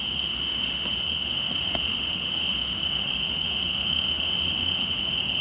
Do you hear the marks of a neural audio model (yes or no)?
yes